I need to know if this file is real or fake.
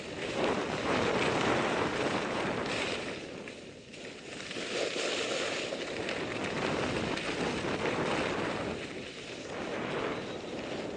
real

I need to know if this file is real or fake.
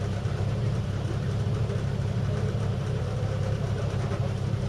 fake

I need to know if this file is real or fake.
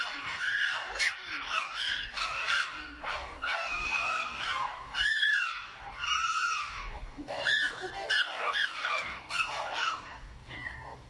fake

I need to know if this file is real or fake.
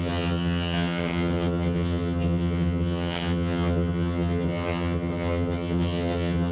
fake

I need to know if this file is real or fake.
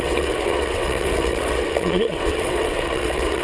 fake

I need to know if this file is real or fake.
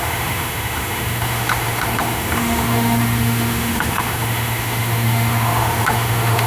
fake